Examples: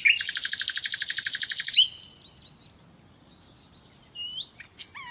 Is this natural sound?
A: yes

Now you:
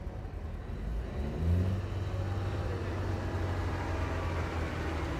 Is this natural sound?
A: yes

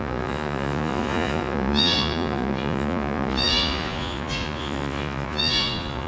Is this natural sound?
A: no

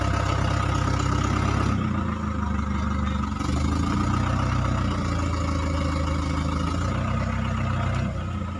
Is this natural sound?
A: yes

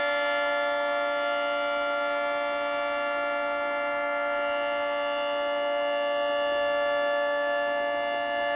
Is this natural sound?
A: yes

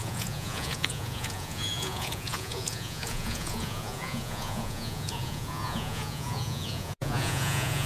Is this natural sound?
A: no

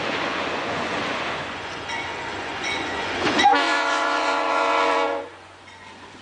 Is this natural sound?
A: no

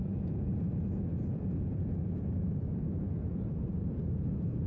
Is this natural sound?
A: no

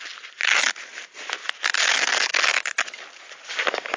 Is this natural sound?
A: yes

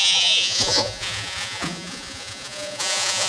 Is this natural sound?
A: no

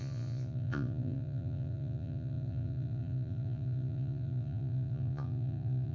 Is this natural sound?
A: no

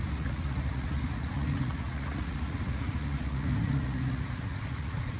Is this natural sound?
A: no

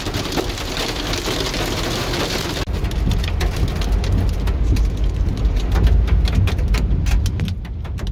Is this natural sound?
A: yes